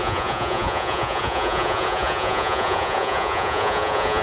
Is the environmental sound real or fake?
fake